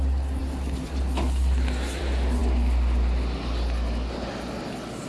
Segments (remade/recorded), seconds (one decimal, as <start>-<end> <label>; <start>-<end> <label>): 0.0-5.1 recorded